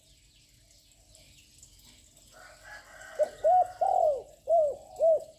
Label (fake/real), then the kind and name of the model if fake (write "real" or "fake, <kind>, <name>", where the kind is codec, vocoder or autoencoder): real